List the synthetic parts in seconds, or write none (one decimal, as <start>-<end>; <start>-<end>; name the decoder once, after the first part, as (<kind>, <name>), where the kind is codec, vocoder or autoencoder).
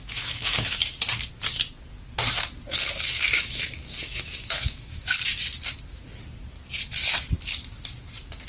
0.0-0.8 (autoencoder, DAC-VAE); 2.7-5.0